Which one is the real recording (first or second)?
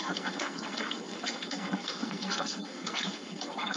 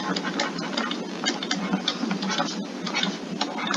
second